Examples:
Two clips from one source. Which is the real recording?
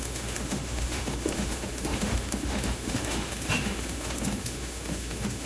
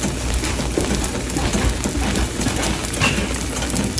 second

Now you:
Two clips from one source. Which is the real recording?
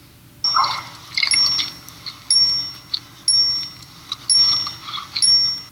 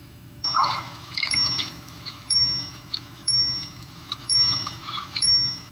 first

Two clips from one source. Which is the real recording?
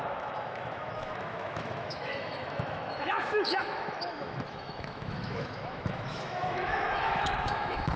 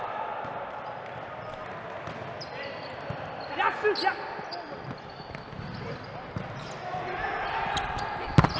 second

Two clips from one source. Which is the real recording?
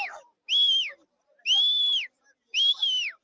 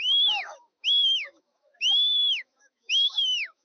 first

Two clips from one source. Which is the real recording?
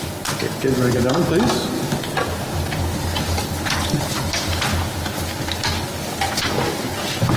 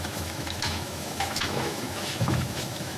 first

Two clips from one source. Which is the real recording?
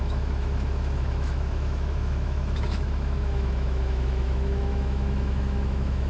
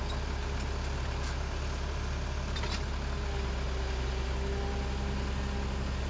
second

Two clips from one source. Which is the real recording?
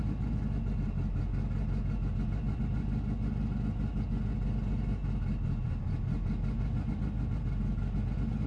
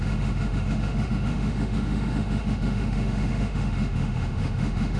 first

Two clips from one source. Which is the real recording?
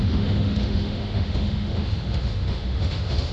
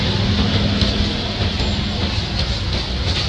second